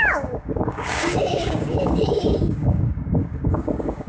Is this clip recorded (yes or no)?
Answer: no